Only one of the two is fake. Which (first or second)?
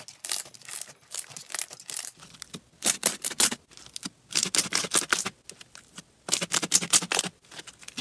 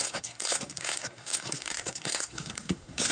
second